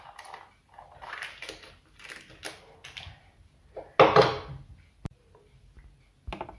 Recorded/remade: recorded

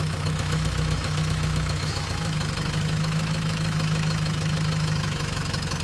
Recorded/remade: remade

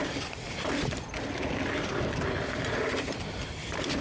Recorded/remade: recorded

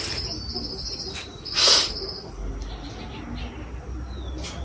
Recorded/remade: recorded